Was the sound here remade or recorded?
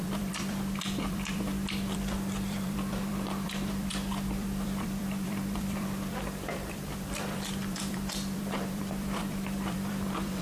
remade